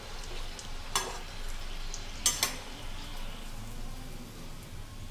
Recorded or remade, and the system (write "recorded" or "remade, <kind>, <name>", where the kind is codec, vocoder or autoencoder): recorded